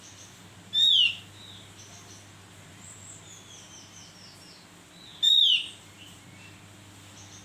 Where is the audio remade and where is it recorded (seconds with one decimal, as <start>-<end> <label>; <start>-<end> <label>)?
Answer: 0.0-5.1 recorded; 5.1-6.2 remade; 6.2-7.4 recorded